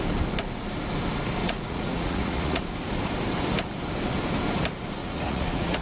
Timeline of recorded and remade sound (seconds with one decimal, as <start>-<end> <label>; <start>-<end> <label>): 0.0-1.4 recorded; 1.4-2.6 remade; 2.6-5.0 recorded; 5.0-5.8 remade